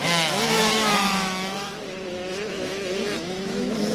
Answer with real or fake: fake